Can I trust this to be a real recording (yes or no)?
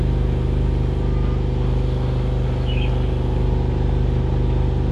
yes